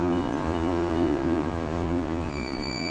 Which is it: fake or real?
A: fake